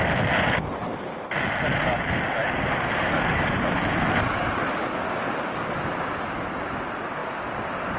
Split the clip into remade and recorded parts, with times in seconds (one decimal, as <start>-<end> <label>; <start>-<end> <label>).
0.0-8.0 recorded